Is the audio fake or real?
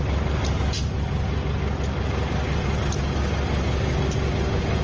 real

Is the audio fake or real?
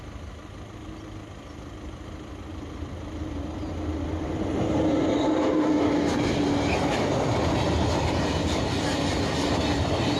real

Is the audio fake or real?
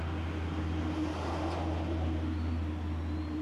real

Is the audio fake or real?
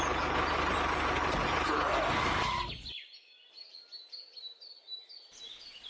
real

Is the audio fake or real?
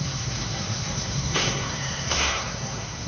fake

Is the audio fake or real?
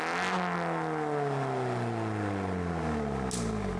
real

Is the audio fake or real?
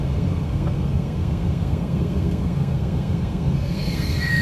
fake